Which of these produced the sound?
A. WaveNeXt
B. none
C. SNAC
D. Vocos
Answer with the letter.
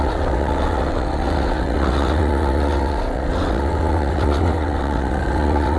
A